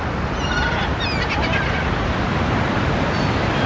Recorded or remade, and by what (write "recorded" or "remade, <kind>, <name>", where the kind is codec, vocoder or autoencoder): recorded